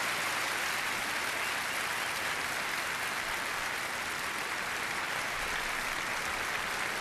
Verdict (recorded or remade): recorded